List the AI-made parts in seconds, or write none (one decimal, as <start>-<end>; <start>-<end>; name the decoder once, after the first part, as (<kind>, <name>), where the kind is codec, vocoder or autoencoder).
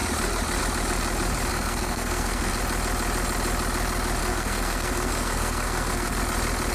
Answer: 1.5-2.5 (codec, SNAC); 4.2-6.2